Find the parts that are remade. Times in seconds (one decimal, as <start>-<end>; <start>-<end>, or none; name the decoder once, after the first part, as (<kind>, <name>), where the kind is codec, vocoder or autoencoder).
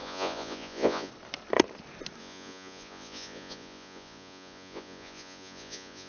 0.0-1.1 (vocoder, Vocos); 2.2-6.1